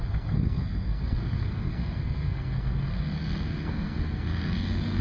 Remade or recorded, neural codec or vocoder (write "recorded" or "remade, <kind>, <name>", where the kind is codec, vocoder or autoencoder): remade, codec, SNAC